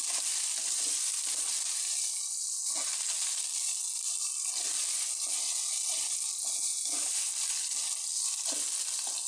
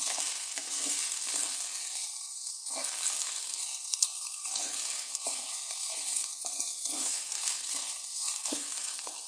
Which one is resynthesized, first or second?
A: second